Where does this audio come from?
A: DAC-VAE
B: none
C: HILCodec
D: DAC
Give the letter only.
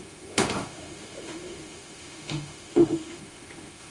A